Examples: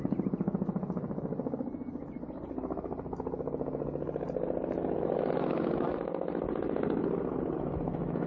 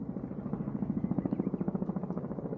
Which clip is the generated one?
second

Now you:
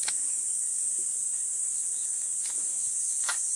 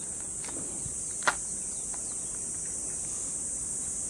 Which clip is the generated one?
first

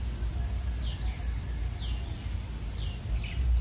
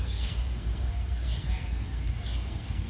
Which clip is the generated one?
second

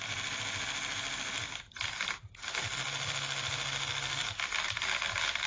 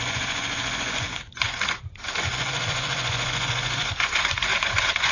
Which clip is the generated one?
second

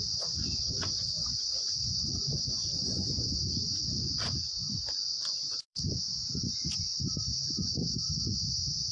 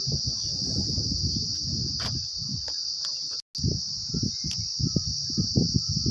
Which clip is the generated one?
first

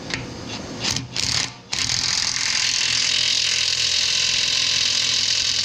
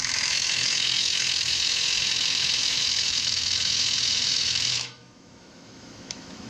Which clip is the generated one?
second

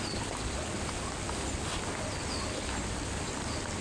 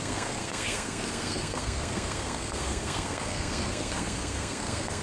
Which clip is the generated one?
second